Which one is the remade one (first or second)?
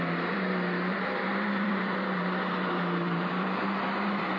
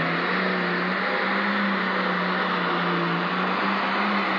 first